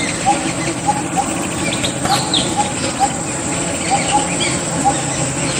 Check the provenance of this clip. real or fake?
real